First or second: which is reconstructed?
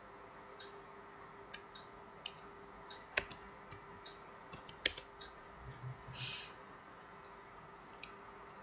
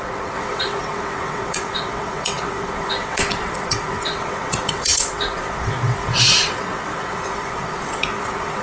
second